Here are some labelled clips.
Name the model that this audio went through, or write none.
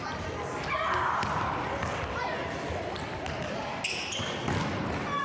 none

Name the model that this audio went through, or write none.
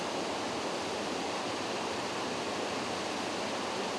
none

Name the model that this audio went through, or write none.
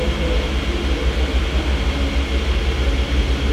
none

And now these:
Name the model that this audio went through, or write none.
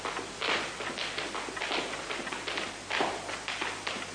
none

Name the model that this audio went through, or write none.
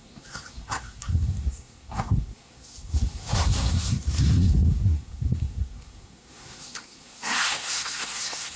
codec, SNAC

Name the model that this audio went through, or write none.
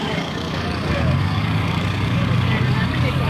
codec, DAC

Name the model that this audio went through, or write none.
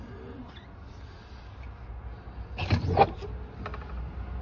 none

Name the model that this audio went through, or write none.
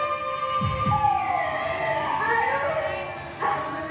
none